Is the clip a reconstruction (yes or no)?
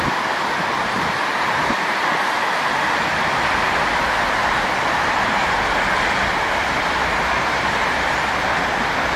no